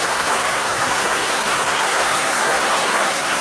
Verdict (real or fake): fake